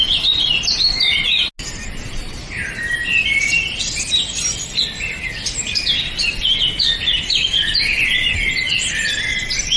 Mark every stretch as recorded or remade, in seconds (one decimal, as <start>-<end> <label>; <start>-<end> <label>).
0.0-9.8 recorded